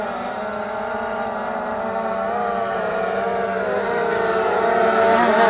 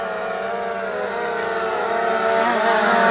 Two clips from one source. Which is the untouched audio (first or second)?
second